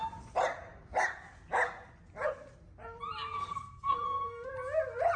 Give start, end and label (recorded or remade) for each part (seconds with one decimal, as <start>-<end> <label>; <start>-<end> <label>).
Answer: 0.0-3.3 recorded; 3.3-4.5 remade; 4.5-5.2 recorded